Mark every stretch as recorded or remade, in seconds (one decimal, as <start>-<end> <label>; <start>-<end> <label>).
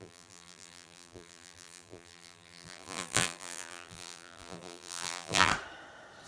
0.0-5.5 remade; 5.5-6.3 recorded